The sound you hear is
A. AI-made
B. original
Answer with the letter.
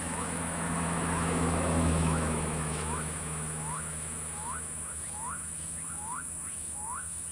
A